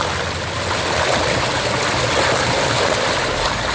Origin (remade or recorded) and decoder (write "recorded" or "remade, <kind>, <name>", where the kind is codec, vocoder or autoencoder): recorded